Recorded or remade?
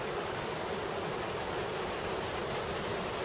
recorded